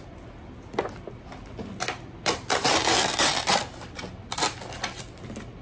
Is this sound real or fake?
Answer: real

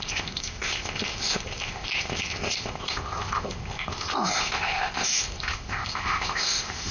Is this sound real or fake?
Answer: fake